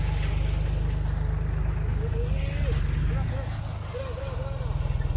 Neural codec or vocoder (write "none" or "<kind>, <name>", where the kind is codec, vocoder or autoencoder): none